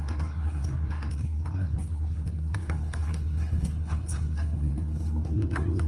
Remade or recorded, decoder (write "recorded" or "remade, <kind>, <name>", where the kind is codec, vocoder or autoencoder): remade, codec, SNAC